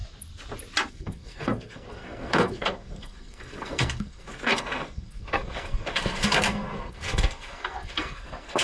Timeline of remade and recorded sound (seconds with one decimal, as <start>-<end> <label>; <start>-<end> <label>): 0.0-0.9 recorded; 0.9-8.6 remade

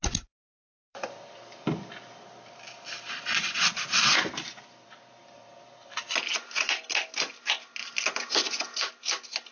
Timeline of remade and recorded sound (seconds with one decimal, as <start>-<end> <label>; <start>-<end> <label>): 0.0-0.8 recorded; 0.8-6.0 remade; 6.0-7.8 recorded; 7.8-8.8 remade; 8.8-9.5 recorded

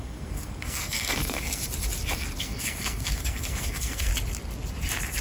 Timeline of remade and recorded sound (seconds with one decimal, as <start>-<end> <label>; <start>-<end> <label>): 0.0-1.6 remade; 1.6-2.4 recorded; 2.4-4.1 remade; 4.1-5.2 recorded

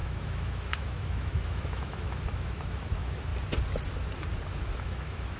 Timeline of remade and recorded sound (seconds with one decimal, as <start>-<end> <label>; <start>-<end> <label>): 0.0-3.3 remade; 3.3-4.8 recorded; 4.8-5.4 remade

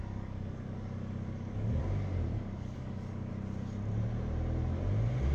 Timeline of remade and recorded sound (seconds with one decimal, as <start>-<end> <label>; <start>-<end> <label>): 0.0-1.8 remade; 1.8-2.3 recorded; 2.3-3.3 remade; 3.3-5.3 recorded